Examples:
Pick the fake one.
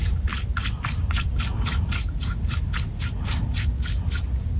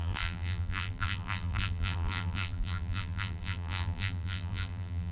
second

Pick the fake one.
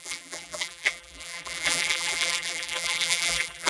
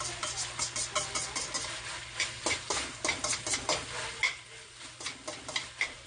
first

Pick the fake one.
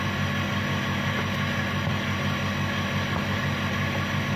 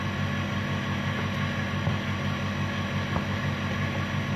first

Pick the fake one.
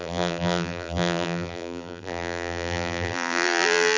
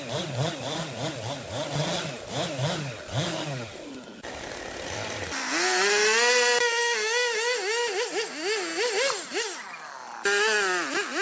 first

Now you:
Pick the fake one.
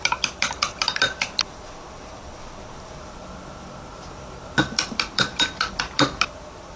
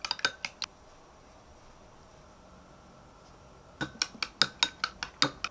first